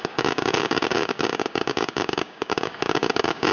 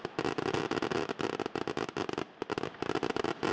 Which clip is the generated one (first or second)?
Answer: first